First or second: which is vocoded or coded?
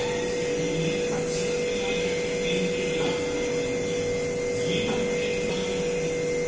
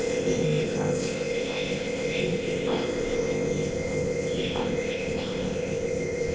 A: second